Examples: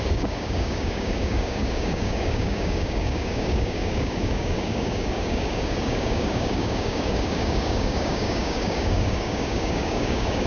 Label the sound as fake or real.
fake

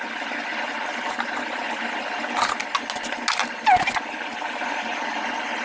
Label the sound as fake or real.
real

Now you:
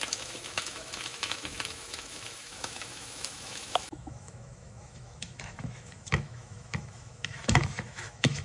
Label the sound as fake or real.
fake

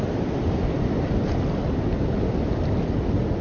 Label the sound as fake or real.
real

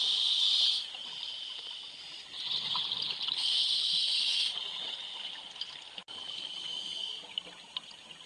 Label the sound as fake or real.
real